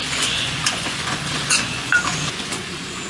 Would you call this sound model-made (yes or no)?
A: yes